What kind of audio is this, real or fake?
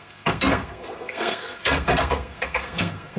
fake